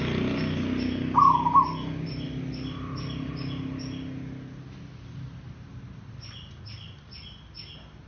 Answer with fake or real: real